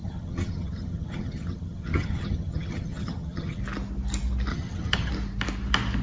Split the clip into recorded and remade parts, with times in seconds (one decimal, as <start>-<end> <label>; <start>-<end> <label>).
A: 0.0-3.6 remade; 3.6-4.5 recorded; 4.5-5.1 remade; 5.1-6.0 recorded